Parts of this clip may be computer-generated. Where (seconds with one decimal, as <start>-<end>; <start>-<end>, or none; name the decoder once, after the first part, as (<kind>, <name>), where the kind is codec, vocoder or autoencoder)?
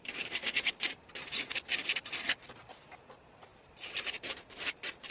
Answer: 0.4-1.0 (vocoder, BigVGAN v2); 3.5-5.1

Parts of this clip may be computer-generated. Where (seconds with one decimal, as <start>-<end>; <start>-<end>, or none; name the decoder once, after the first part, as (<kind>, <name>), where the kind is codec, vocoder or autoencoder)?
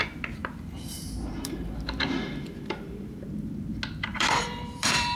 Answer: 0.4-3.5 (vocoder, BigVGAN v2); 4.1-5.2